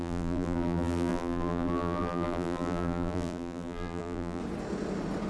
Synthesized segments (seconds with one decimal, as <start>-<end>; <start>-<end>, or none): 0.0-4.4